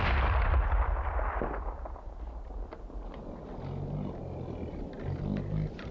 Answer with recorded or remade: recorded